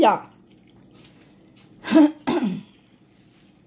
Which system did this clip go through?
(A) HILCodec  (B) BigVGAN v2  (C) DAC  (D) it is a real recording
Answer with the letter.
D